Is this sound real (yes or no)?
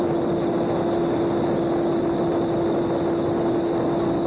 yes